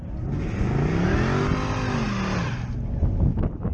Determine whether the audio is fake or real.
real